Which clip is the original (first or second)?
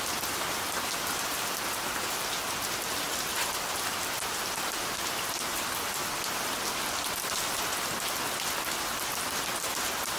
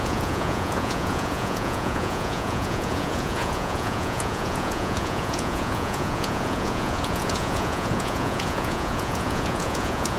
first